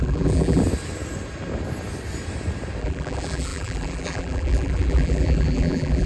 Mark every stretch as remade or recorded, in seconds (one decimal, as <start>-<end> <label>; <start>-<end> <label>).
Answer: 0.0-0.6 remade; 0.6-2.8 recorded; 2.8-6.1 remade

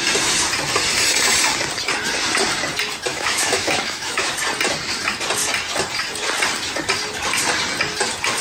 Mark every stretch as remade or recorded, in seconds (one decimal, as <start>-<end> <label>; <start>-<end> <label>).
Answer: 0.0-3.1 recorded; 3.1-4.3 remade; 4.3-8.4 recorded

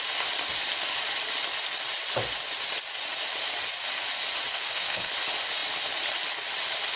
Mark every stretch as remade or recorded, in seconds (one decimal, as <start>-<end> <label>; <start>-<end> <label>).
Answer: 0.0-4.5 recorded; 4.5-5.1 remade; 5.1-7.0 recorded

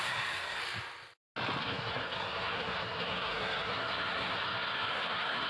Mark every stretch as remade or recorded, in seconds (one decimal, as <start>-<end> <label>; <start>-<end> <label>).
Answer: 0.0-0.6 remade; 0.6-1.6 recorded; 1.6-5.5 remade

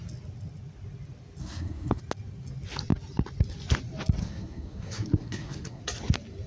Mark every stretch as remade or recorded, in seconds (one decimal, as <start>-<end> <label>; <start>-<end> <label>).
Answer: 0.0-1.4 recorded; 1.4-2.0 remade; 2.0-4.2 recorded; 4.2-5.8 remade; 5.8-6.5 recorded